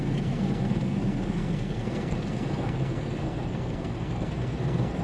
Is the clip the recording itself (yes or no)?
no